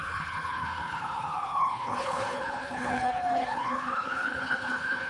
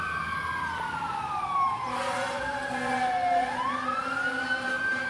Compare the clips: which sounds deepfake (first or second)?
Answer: first